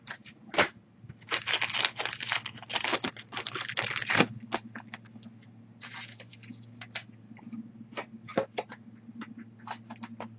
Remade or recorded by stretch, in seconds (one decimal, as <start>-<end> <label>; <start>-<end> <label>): 0.0-10.4 recorded